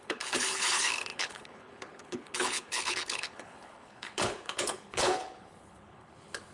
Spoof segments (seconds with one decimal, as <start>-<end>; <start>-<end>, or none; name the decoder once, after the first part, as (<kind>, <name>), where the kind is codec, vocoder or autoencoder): 0.0-6.5 (codec, HILCodec)